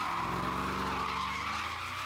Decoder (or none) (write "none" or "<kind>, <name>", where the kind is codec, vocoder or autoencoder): none